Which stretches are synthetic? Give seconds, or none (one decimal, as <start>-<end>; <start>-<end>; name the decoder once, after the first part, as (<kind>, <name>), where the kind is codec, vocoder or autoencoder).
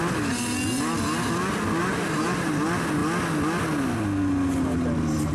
1.8-2.5 (vocoder, BigVGAN v2)